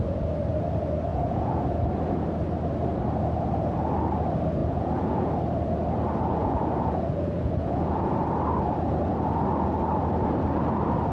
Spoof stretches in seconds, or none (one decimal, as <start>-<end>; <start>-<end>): 1.1-1.8; 4.6-5.3; 6.4-8.1